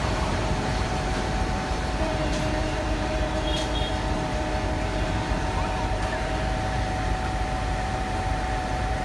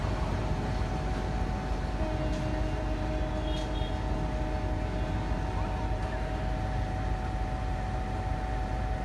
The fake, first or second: first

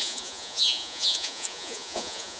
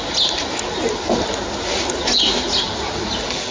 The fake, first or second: first